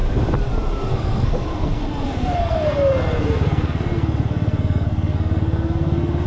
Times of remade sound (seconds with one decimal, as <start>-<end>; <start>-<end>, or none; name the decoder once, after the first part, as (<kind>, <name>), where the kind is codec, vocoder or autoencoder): 0.9-6.3 (codec, SNAC)